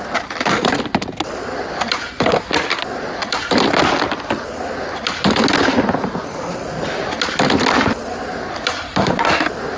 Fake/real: real